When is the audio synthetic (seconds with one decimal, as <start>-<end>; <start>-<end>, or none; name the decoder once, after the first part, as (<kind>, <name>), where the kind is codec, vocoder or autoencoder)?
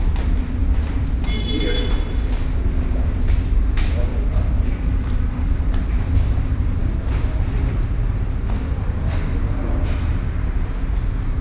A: 0.6-2.5 (vocoder, BigVGAN v2); 4.1-5.9; 6.8-10.0